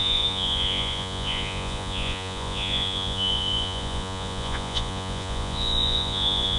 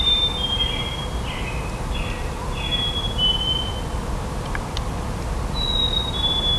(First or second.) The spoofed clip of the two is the first